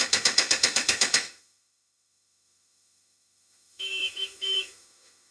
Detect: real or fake fake